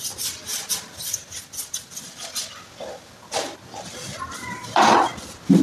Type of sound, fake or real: real